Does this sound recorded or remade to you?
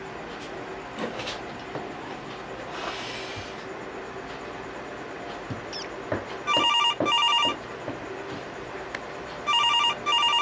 recorded